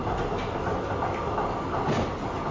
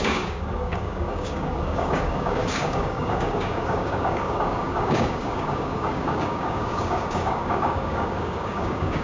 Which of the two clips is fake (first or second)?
second